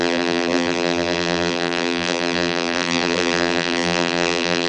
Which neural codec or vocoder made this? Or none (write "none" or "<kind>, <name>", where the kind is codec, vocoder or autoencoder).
vocoder, BigVGAN v2